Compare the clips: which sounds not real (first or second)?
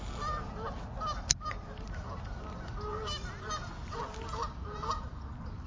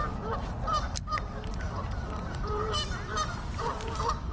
second